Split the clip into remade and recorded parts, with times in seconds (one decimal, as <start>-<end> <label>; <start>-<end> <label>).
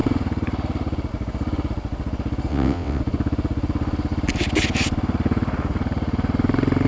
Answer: 0.0-2.5 recorded; 2.5-3.0 remade; 3.0-6.9 recorded